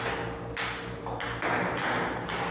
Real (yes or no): yes